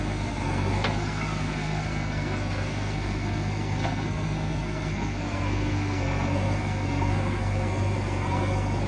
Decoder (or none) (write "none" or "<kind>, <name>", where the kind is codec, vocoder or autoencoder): codec, SNAC